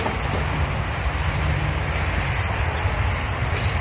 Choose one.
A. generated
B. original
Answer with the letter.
B